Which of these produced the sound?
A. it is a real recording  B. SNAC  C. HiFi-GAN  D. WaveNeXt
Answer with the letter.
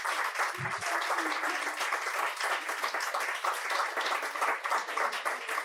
A